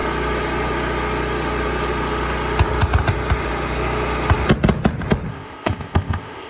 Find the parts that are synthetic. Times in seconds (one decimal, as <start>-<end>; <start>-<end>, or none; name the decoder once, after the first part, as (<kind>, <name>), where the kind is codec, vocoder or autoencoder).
5.3-6.5 (codec, ZipCodec)